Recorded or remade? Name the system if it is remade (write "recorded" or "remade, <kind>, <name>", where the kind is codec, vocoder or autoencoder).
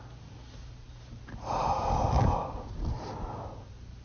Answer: recorded